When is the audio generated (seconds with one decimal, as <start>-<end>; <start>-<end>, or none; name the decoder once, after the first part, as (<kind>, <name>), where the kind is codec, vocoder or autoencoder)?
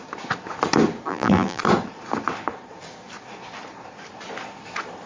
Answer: 1.1-1.6 (vocoder, BigVGAN v2)